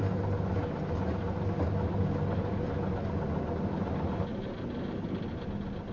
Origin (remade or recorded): recorded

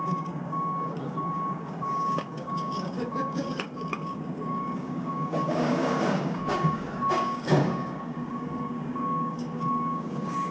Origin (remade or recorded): remade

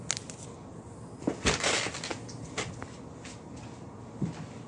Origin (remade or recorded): recorded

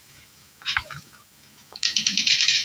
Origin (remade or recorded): remade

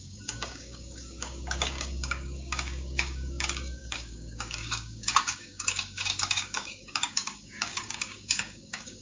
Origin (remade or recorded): remade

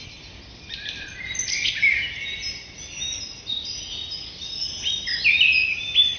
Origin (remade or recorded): recorded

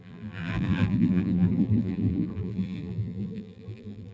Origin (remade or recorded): remade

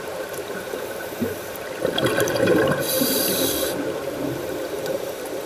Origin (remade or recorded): remade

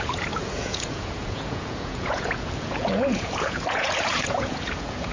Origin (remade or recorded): remade